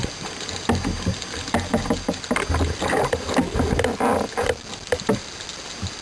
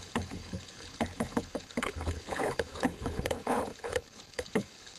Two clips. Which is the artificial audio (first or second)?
second